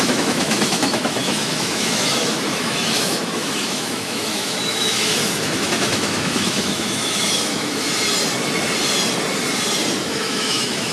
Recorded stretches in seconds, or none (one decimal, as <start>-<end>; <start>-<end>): 7.9-10.0